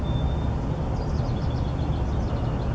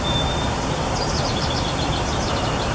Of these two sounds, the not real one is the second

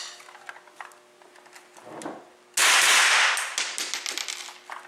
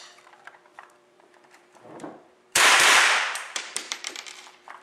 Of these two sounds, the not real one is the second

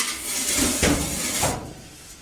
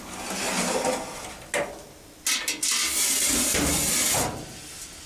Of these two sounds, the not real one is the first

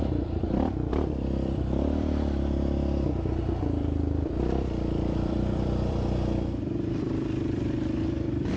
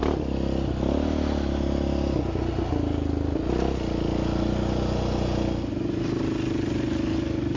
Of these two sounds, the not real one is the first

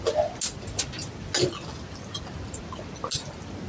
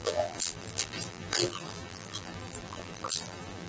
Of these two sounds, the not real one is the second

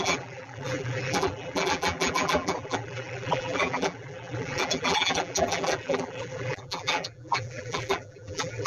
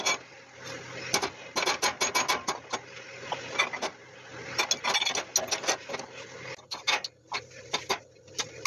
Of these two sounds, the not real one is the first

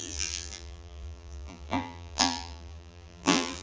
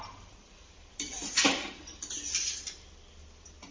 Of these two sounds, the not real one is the first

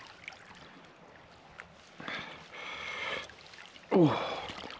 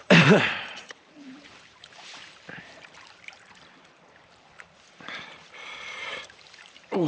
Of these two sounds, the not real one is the second